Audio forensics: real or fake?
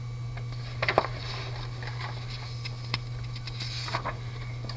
real